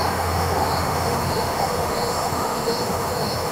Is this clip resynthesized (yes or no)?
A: yes